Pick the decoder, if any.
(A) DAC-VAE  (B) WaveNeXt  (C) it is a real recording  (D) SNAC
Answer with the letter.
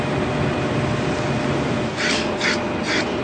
C